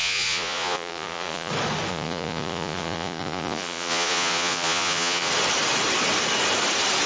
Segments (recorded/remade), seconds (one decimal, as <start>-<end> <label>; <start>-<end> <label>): 0.0-1.5 remade; 1.5-1.9 recorded; 1.9-5.3 remade; 5.3-7.1 recorded